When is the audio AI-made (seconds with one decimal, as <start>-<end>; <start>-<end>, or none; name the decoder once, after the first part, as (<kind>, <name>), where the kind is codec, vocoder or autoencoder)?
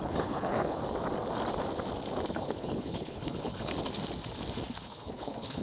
0.0-0.8 (codec, HILCodec); 2.3-3.7; 4.8-5.6